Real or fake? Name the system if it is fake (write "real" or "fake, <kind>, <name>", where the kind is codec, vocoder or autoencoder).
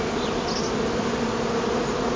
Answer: real